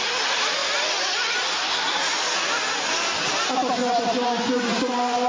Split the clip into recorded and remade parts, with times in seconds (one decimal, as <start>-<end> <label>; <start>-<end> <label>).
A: 0.0-0.6 recorded; 0.6-2.7 remade; 2.7-5.3 recorded